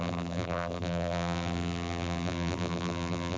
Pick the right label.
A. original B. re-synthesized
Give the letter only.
B